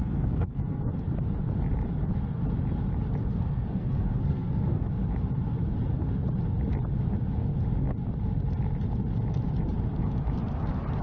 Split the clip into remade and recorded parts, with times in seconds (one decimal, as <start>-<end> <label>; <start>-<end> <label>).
0.0-0.9 remade; 0.9-3.2 recorded; 3.2-4.9 remade; 4.9-11.0 recorded